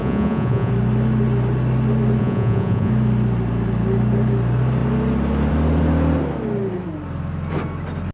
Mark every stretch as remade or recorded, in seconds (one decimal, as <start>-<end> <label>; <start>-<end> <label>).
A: 0.0-0.7 remade; 0.7-2.2 recorded; 2.2-2.9 remade; 2.9-8.1 recorded

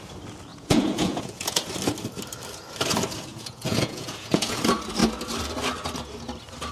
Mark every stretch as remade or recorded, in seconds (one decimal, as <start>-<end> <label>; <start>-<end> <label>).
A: 0.0-0.5 recorded; 0.5-1.7 remade; 1.7-3.3 recorded; 3.3-4.6 remade; 4.6-6.7 recorded

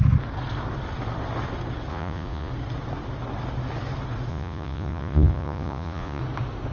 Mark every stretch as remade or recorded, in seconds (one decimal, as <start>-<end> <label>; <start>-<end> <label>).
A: 0.0-1.9 recorded; 1.9-2.5 remade; 2.5-4.3 recorded; 4.3-6.2 remade; 6.2-6.7 recorded

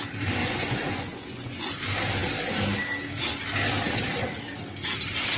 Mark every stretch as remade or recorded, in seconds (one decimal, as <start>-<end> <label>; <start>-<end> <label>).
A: 0.0-0.4 recorded; 0.4-1.8 remade; 1.8-5.4 recorded

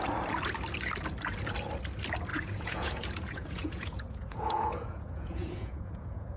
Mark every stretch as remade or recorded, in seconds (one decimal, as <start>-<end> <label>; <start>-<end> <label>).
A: 0.0-2.3 recorded; 2.3-6.4 remade

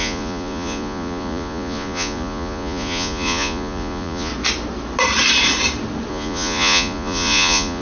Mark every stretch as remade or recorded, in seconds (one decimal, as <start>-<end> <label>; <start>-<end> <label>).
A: 0.0-4.3 remade; 4.3-6.1 recorded; 6.1-7.8 remade